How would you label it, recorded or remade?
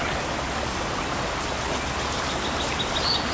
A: recorded